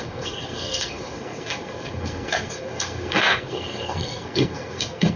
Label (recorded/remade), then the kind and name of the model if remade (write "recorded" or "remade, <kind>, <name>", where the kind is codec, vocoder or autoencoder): remade, codec, SNAC